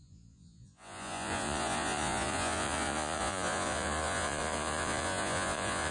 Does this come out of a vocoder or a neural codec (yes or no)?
yes